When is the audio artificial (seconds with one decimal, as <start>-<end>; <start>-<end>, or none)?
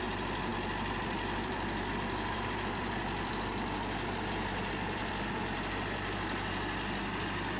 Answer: 0.5-5.1